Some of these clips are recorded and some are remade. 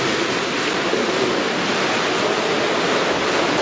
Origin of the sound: recorded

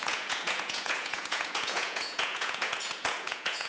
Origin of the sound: remade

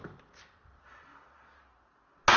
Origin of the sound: recorded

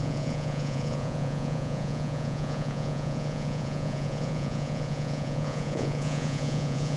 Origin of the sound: remade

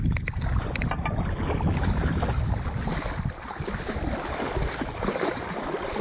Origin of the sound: recorded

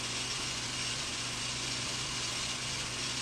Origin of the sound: remade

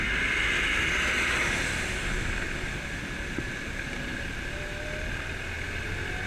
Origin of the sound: recorded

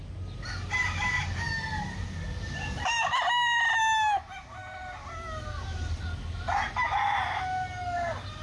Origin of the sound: recorded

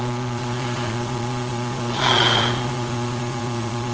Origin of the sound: remade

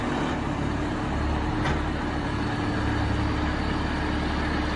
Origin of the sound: recorded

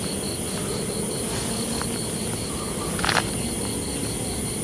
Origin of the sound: recorded